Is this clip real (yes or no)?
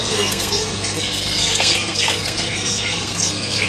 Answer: no